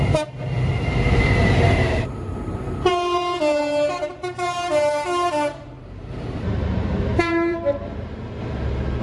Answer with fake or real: fake